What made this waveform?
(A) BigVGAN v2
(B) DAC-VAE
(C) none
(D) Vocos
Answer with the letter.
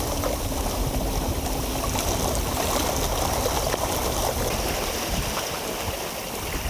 C